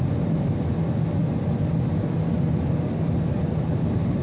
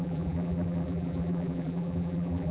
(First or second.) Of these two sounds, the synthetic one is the second